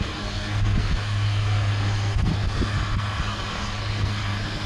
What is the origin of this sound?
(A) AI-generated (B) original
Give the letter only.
A